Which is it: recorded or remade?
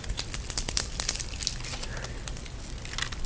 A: recorded